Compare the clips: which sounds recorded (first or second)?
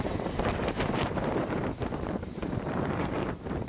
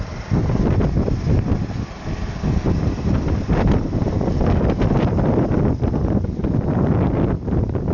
second